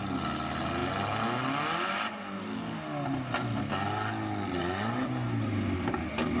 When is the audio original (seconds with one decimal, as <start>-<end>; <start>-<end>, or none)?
0.0-6.4